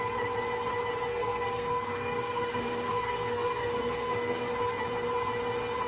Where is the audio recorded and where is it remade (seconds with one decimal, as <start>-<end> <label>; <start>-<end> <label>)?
0.0-1.1 recorded; 1.1-4.5 remade; 4.5-5.9 recorded